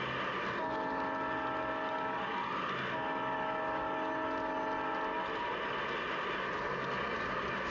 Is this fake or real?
real